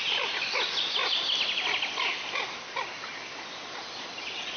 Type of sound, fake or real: real